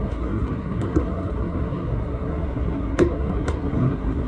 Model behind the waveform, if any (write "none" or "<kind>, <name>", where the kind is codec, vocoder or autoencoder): codec, SNAC